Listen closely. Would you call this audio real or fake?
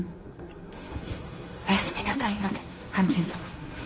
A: fake